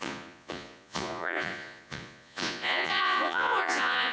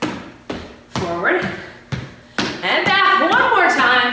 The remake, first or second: first